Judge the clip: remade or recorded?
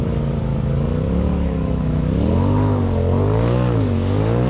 remade